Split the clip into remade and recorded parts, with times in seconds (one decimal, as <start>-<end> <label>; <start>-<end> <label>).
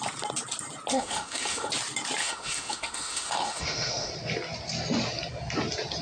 0.0-0.9 recorded; 0.9-1.7 remade; 1.7-2.2 recorded; 2.2-4.1 remade; 4.1-6.0 recorded